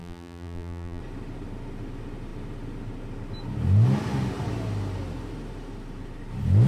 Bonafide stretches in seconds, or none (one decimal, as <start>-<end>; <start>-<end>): 1.0-6.7

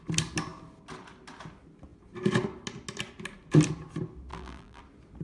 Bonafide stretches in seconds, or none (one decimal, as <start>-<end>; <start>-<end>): 0.0-4.3; 4.8-5.2